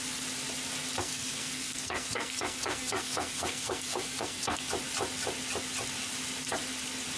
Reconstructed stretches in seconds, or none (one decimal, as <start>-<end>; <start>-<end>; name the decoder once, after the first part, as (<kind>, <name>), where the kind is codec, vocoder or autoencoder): 1.0-4.7 (codec, SNAC)